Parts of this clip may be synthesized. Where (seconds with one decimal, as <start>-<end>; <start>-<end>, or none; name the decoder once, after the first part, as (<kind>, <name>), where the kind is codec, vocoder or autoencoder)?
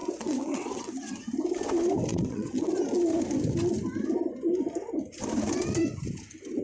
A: 0.0-0.9 (vocoder, WaveNeXt); 2.1-2.7